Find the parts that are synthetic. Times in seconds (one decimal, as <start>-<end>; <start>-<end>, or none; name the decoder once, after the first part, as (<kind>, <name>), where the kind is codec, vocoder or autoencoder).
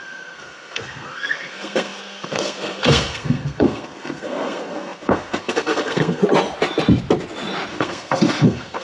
0.0-6.2 (codec, SNAC); 7.7-8.8